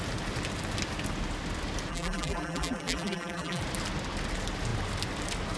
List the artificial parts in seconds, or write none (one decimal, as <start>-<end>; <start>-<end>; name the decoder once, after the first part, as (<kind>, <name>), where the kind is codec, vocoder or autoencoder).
1.9-3.6 (vocoder, BigVGAN v2)